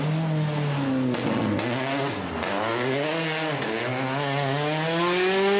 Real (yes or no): yes